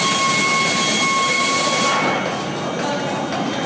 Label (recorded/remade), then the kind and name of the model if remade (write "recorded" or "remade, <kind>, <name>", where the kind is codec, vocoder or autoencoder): recorded